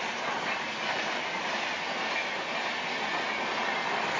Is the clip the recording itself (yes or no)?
yes